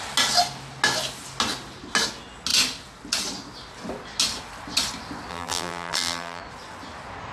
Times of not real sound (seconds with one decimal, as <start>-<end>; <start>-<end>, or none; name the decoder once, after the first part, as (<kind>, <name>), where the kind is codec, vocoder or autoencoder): 5.3-6.4 (vocoder, BigVGAN v2)